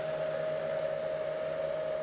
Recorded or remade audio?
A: recorded